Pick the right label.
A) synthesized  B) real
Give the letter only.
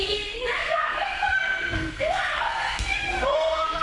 A